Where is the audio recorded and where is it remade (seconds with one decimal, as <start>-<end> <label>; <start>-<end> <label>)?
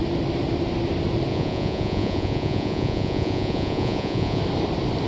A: 0.0-1.3 recorded; 1.3-4.4 remade; 4.4-5.1 recorded